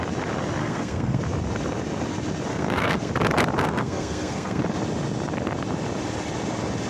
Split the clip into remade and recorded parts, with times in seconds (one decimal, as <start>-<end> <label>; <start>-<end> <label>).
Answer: 0.0-0.6 recorded; 0.6-1.2 remade; 1.2-2.5 recorded; 2.5-3.1 remade; 3.1-3.6 recorded; 3.6-4.6 remade; 4.6-6.9 recorded